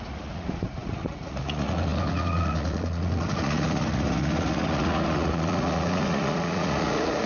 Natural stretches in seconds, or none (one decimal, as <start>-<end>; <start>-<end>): none